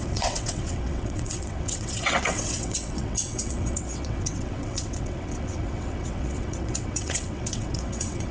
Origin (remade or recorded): remade